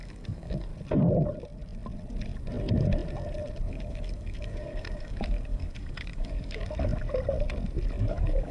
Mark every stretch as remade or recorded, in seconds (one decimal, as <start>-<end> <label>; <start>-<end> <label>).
0.0-0.7 remade; 0.7-3.7 recorded; 3.7-6.6 remade; 6.6-8.0 recorded; 8.0-8.5 remade